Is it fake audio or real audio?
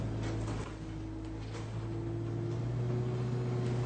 real